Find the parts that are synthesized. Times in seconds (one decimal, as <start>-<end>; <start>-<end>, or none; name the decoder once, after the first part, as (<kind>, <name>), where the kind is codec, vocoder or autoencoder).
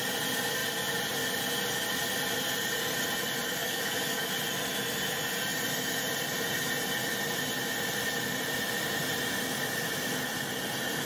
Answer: 3.6-4.3 (codec, DAC)